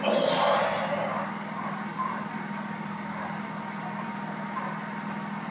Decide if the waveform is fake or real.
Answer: real